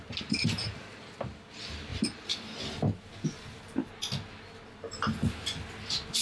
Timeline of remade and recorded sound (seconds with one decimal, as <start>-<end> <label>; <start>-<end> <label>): 0.0-1.9 recorded; 1.9-3.9 remade; 3.9-6.2 recorded